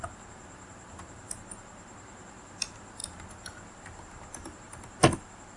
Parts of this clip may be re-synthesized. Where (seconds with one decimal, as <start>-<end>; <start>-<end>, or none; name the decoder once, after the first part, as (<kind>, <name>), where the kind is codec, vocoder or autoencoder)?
none

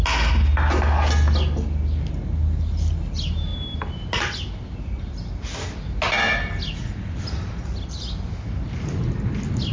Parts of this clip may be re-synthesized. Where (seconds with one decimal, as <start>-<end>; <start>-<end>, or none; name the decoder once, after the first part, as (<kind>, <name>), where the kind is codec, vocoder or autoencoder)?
none

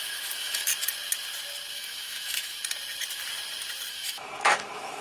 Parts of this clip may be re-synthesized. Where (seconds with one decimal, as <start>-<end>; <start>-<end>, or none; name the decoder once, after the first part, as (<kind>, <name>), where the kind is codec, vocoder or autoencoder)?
0.0-0.7 (autoencoder, DAC-VAE); 1.7-2.6; 3.9-5.0

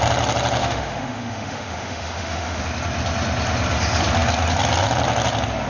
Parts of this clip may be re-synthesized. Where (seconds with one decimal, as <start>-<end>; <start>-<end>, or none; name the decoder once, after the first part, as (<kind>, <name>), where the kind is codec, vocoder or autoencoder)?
0.6-2.6 (autoencoder, DAC-VAE)